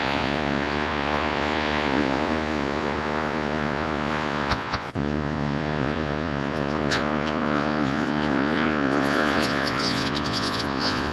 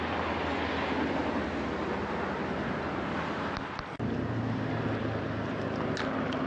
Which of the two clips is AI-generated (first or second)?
first